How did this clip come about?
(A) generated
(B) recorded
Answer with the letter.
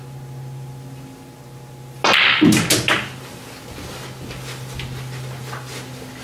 B